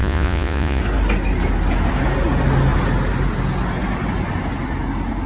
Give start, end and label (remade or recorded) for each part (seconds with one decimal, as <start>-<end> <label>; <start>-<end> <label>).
0.0-0.8 remade; 0.8-5.3 recorded

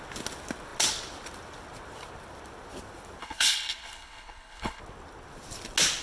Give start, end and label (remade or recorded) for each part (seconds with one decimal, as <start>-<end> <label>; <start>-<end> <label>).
0.0-3.2 recorded; 3.2-4.8 remade; 4.8-6.0 recorded